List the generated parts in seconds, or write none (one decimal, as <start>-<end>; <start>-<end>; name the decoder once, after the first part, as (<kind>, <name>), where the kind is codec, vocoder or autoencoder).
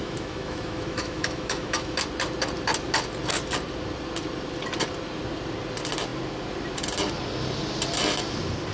0.0-2.0 (autoencoder, DAC-VAE)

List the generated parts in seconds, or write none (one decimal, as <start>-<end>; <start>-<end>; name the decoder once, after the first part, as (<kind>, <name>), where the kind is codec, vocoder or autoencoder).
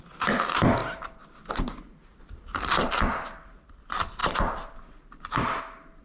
2.2-3.0 (vocoder, BigVGAN v2); 4.2-5.6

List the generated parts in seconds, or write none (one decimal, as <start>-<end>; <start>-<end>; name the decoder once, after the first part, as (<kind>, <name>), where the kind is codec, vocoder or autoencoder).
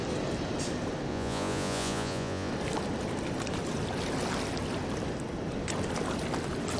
1.1-2.5 (vocoder, Vocos)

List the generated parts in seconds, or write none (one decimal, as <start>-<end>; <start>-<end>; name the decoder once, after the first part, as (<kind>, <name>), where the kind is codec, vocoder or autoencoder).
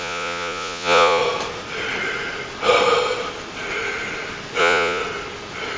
0.0-1.2 (vocoder, Vocos); 4.6-5.0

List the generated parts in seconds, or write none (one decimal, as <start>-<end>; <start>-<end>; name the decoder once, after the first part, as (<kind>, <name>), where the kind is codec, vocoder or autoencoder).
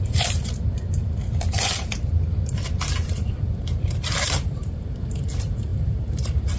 0.0-6.6 (vocoder, BigVGAN v2)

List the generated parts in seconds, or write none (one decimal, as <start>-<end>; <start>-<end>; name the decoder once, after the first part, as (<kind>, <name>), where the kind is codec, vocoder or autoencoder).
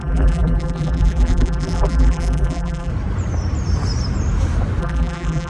0.0-2.9 (vocoder, BigVGAN v2); 4.8-5.5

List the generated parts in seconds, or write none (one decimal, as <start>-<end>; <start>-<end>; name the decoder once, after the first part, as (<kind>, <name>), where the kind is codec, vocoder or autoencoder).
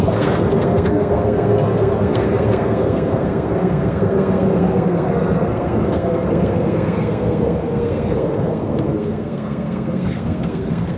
0.0-11.0 (codec, SNAC)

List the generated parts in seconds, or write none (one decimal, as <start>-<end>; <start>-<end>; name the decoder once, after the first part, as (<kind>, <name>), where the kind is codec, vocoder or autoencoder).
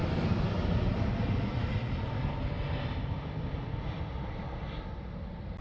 none